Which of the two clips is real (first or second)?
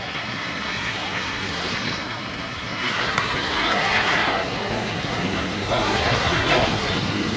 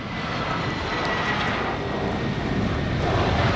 second